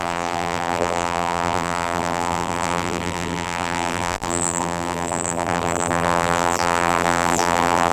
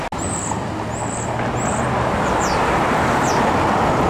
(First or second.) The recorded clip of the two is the second